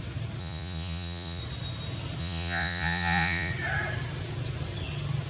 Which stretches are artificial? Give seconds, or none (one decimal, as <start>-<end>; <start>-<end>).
0.4-1.4; 2.2-3.5